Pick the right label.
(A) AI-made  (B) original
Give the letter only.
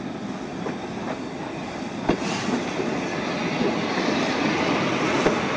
B